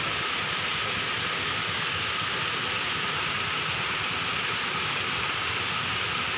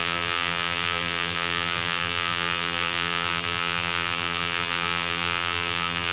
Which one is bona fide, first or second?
first